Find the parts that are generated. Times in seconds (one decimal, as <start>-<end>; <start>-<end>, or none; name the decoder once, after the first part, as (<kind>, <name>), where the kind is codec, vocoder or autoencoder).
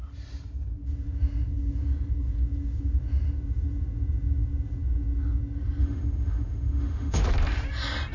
5.8-7.2 (autoencoder, DAC-VAE)